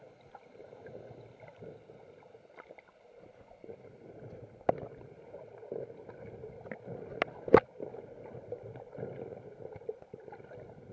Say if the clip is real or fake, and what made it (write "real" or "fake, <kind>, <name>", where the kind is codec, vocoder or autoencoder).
real